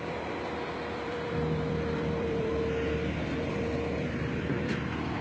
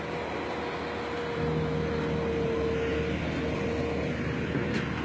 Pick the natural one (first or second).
second